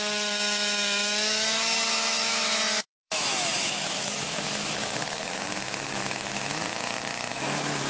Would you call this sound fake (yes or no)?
yes